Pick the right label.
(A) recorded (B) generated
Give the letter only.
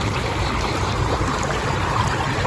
A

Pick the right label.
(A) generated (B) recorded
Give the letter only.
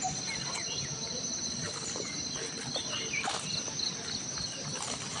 B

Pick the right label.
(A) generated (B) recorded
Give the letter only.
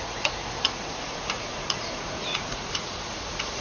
A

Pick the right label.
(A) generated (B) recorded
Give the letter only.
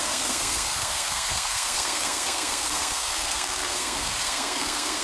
A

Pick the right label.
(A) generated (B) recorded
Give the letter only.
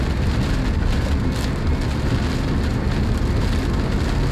B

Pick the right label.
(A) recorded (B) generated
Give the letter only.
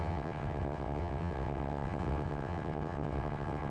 B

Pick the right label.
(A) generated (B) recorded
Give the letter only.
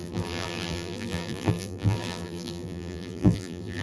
A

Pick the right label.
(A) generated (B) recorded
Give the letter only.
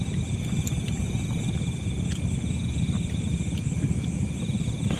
B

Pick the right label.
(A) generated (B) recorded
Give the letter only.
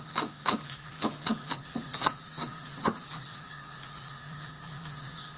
A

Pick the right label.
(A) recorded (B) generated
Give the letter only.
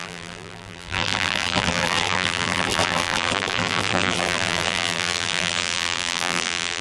B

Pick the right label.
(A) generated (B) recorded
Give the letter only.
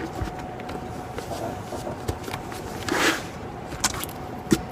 B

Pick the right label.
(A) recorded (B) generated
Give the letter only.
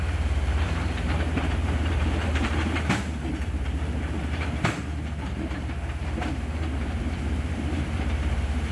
B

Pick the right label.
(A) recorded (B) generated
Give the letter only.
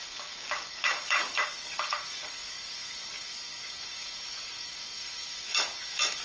B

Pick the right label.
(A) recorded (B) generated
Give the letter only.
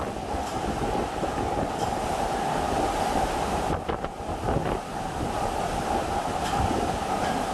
A